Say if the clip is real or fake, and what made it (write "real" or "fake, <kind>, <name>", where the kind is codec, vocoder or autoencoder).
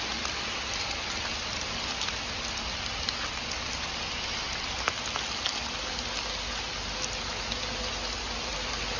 real